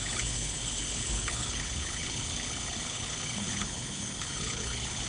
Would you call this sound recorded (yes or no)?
no